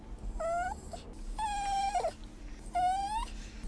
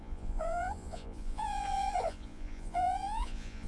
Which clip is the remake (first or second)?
second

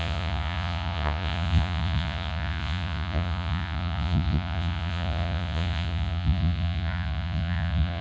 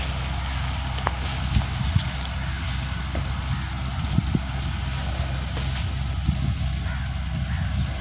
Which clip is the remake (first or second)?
first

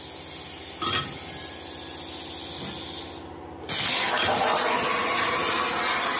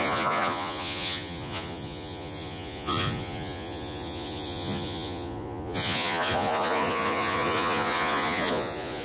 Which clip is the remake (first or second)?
second